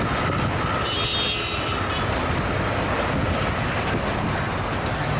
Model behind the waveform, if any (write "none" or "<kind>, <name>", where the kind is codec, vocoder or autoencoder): none